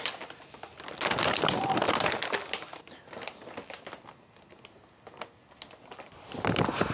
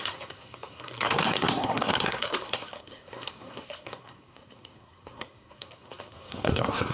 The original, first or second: first